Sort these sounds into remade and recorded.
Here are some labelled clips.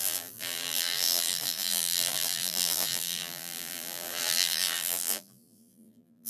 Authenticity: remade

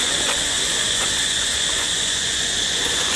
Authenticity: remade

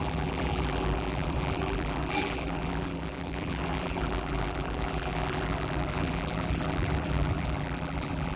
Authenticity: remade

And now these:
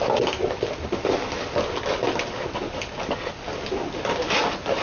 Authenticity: recorded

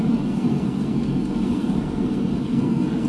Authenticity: remade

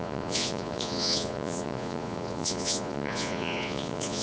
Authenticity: remade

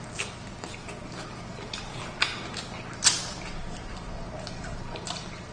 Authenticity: recorded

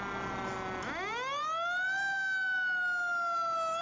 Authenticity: recorded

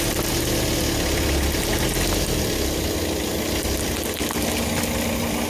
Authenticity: recorded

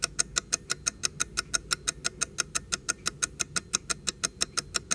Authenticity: recorded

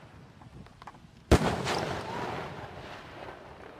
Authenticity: recorded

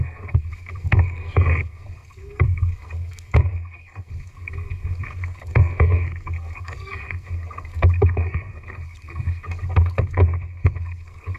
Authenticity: remade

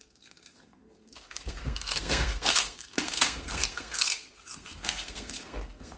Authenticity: remade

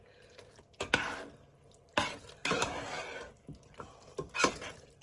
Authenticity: recorded